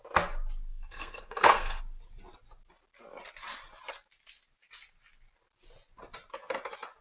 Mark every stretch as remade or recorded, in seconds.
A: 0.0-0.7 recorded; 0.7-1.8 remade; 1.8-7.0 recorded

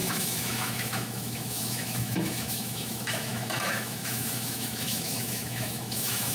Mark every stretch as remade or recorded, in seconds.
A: 0.0-6.3 remade

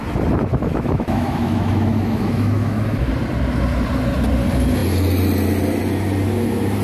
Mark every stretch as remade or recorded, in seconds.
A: 0.0-0.5 recorded; 0.5-3.1 remade; 3.1-6.8 recorded

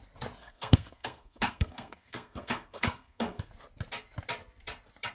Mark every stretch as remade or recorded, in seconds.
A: 0.0-0.4 recorded; 0.4-3.5 remade; 3.5-5.1 recorded

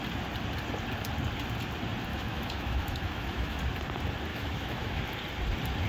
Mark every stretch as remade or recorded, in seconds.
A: 0.0-2.1 recorded; 2.1-3.6 remade; 3.6-4.3 recorded; 4.3-5.0 remade; 5.0-5.9 recorded

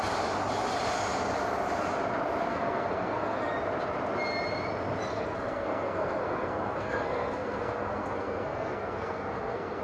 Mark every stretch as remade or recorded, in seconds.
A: 0.0-2.5 recorded; 2.5-3.5 remade; 3.5-5.1 recorded; 5.1-9.8 remade

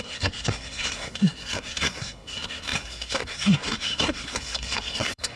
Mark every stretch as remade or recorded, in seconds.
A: 0.0-5.4 remade

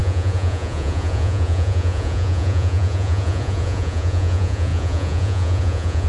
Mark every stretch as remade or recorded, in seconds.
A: 0.0-6.1 remade